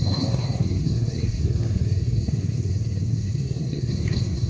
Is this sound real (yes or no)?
no